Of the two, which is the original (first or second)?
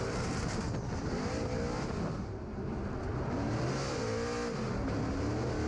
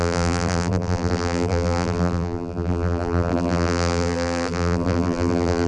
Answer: first